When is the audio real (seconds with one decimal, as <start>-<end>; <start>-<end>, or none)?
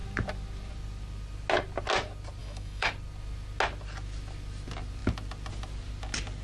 0.0-2.4; 2.9-6.4